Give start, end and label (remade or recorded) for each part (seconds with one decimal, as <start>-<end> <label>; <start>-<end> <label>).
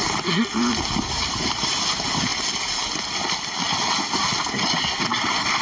0.0-5.6 recorded